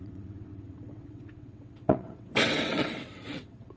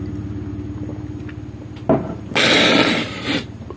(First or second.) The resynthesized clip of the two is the first